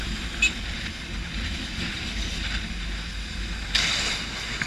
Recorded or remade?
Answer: recorded